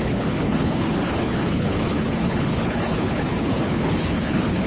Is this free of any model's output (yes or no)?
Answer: no